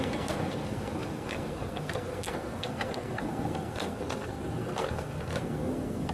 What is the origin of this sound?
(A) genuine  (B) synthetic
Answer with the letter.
B